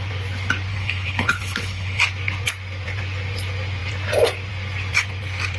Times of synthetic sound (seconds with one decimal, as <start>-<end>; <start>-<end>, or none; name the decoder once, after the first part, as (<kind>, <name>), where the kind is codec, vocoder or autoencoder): 0.7-2.0 (codec, HILCodec)